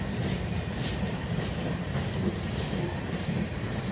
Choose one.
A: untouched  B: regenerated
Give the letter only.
B